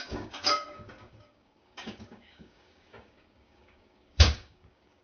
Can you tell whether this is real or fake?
fake